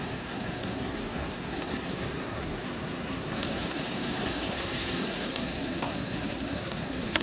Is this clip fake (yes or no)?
yes